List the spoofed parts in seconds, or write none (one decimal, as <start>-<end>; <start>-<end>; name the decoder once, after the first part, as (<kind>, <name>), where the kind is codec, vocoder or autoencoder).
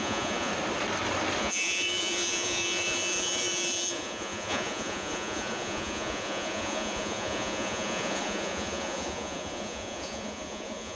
0.0-0.5 (vocoder, Vocos); 1.4-10.9